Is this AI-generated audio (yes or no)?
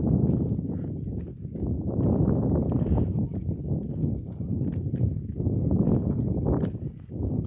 no